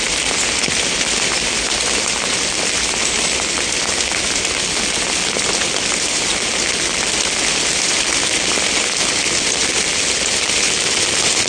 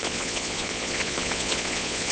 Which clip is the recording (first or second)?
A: first